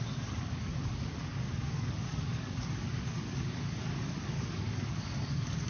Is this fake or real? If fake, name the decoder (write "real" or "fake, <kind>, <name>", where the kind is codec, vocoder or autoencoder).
fake, codec, DAC